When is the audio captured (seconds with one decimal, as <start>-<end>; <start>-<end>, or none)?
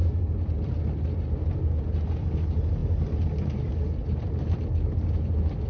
0.0-5.7